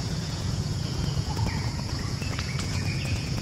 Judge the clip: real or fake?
fake